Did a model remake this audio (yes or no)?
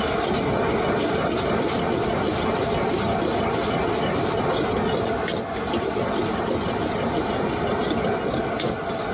no